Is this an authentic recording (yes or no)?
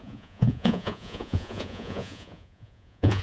no